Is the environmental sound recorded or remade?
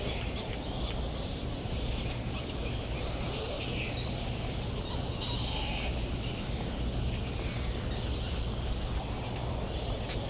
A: recorded